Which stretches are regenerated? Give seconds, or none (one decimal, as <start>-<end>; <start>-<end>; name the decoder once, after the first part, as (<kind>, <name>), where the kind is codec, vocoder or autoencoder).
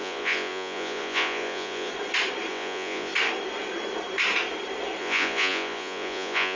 0.0-1.9 (vocoder, Vocos); 2.5-3.1; 5.0-6.6